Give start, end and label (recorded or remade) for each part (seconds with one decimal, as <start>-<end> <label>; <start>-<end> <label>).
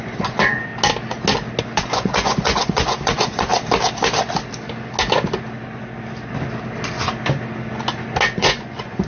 0.0-0.7 remade; 0.7-1.6 recorded; 1.6-3.5 remade; 3.5-8.4 recorded; 8.4-9.1 remade